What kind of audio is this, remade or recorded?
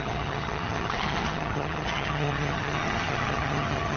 remade